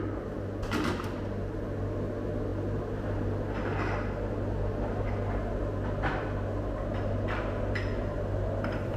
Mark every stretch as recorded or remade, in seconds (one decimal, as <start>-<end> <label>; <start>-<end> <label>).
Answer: 0.0-9.0 recorded